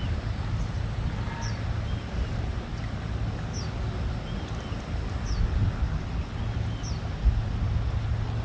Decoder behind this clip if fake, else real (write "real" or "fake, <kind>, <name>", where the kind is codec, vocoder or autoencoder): real